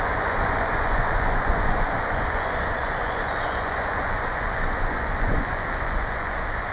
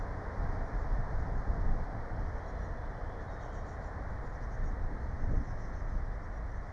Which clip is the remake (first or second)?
first